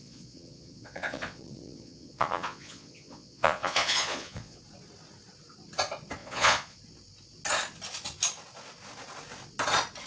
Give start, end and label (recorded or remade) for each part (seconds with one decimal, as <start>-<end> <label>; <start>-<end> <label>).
0.0-4.6 remade; 4.6-6.2 recorded; 6.2-6.8 remade; 6.8-10.1 recorded